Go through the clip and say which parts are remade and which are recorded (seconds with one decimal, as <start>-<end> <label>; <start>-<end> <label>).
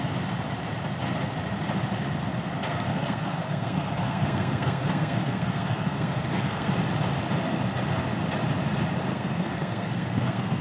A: 0.0-2.7 recorded; 2.7-6.7 remade; 6.7-9.1 recorded; 9.1-10.6 remade